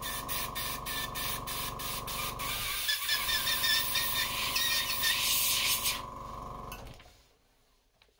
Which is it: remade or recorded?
recorded